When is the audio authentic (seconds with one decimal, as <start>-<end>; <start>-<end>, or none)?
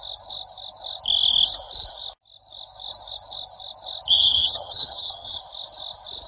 0.0-4.1; 5.4-6.3